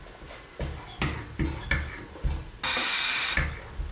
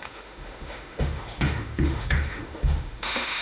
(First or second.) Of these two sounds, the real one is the first